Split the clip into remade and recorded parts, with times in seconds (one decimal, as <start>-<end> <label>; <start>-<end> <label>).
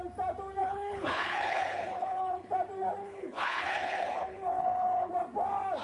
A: 0.0-0.6 recorded; 0.6-2.5 remade; 2.5-3.0 recorded; 3.0-5.1 remade; 5.1-5.8 recorded